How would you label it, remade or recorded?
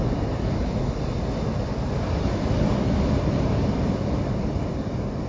recorded